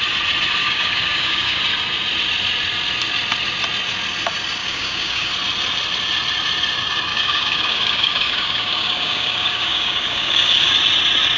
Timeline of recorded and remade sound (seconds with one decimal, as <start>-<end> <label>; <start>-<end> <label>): 0.0-0.6 recorded; 0.6-1.6 remade; 1.6-4.6 recorded; 4.6-5.3 remade; 5.3-7.1 recorded; 7.1-10.7 remade; 10.7-11.4 recorded